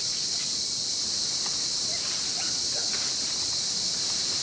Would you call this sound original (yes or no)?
yes